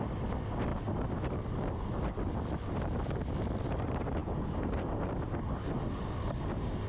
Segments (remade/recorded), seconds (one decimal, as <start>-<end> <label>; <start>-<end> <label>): 0.0-6.9 recorded

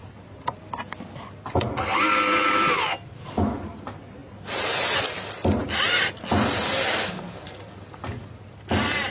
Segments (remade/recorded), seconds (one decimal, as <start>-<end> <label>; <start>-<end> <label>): 0.0-9.1 recorded

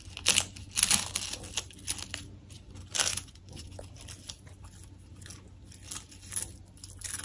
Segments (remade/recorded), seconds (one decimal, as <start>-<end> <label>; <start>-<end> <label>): 0.0-3.1 recorded; 3.1-3.8 remade; 3.8-7.2 recorded

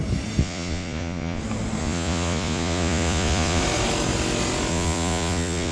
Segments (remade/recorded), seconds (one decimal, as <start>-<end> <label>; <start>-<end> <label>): 0.0-0.4 recorded; 0.4-1.4 remade; 1.4-1.8 recorded; 1.8-3.6 remade; 3.6-4.7 recorded; 4.7-5.7 remade

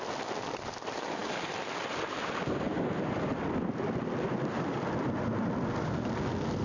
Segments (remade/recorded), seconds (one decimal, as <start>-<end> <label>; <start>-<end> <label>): 0.0-6.6 recorded

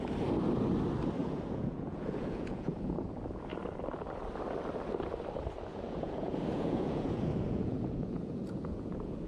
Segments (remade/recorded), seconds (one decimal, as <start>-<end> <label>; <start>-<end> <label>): 0.0-1.2 recorded; 1.2-3.1 remade; 3.1-5.7 recorded; 5.7-9.3 remade

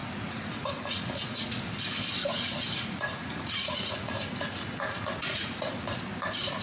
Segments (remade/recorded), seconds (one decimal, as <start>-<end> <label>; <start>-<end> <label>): 0.0-1.6 remade; 1.6-2.2 recorded; 2.2-6.0 remade; 6.0-6.6 recorded